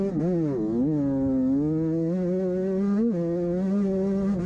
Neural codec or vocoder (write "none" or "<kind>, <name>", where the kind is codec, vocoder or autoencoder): none